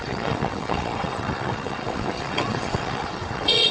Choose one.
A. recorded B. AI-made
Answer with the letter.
B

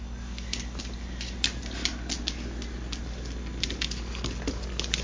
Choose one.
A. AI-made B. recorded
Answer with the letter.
B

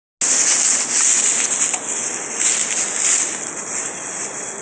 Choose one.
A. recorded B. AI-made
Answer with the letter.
A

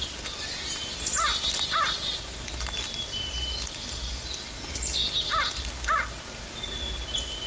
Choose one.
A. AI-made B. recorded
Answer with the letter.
B